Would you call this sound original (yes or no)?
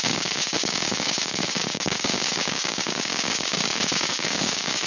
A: no